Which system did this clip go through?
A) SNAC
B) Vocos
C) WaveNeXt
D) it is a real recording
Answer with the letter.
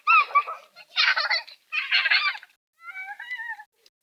D